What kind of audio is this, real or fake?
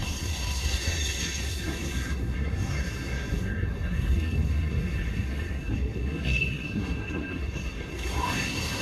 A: fake